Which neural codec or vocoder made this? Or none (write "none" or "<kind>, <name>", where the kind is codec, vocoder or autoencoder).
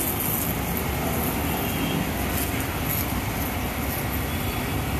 none